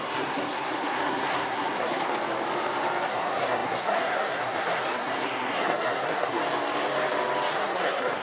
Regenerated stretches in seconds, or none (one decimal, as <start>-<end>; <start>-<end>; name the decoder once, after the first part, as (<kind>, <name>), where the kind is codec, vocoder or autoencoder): 0.0-2.1 (codec, SNAC); 3.1-6.4; 7.5-8.2